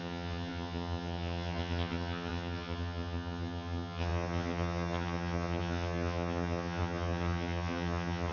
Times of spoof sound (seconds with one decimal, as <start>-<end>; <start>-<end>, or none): 0.0-8.3